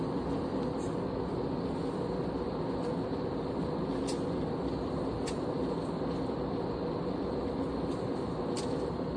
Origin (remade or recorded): recorded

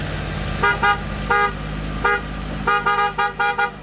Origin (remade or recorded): recorded